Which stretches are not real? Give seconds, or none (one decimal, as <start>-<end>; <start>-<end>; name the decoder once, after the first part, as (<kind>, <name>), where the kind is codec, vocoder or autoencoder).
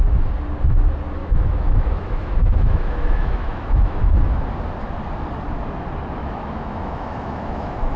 1.2-4.3 (autoencoder, DAC-VAE); 6.2-8.0